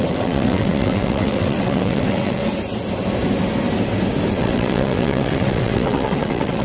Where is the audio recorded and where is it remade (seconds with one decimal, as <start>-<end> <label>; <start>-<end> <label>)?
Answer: 0.0-2.4 remade; 2.4-4.3 recorded; 4.3-6.6 remade